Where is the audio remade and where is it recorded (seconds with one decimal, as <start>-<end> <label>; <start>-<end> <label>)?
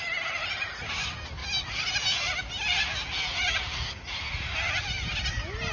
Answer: 0.0-5.7 recorded